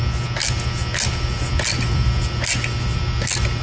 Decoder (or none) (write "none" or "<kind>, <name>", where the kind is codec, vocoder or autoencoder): none